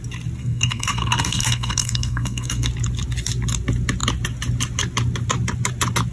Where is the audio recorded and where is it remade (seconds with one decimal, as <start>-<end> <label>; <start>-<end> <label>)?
0.0-0.4 recorded; 0.4-2.7 remade; 2.7-6.1 recorded